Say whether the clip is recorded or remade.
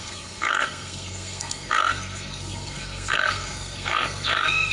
remade